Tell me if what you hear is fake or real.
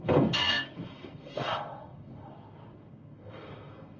fake